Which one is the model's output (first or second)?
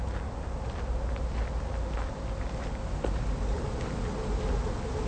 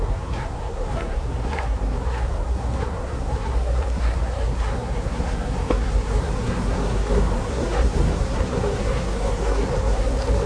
second